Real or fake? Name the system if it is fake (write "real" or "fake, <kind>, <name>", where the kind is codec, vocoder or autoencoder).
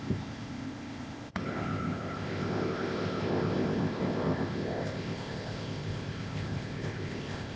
fake, codec, ZipCodec